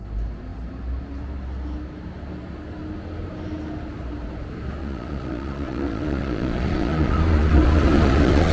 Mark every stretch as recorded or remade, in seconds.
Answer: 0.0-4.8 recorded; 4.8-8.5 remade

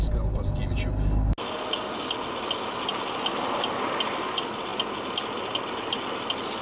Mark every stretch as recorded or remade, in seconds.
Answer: 0.0-6.6 recorded

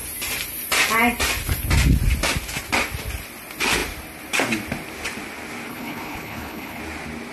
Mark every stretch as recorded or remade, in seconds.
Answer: 0.0-5.7 recorded; 5.7-6.8 remade; 6.8-7.3 recorded

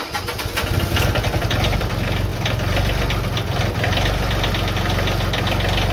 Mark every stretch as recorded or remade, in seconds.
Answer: 0.0-5.9 recorded